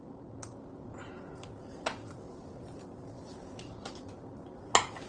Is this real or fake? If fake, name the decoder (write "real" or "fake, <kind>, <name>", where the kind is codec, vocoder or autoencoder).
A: real